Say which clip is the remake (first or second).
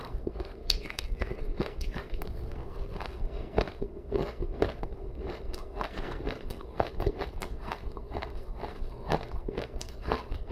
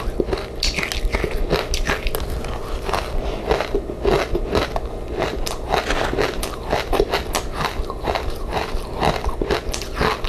first